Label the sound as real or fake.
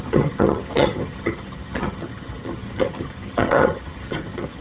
fake